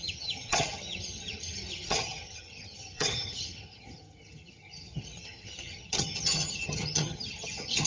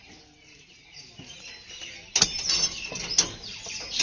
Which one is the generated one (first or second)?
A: first